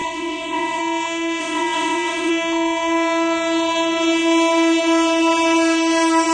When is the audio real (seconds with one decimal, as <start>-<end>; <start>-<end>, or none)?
0.8-1.4; 2.3-6.3